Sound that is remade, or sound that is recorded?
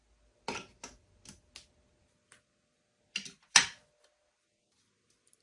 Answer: recorded